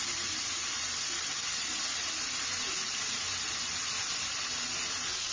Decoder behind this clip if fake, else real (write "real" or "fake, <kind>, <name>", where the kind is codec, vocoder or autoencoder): real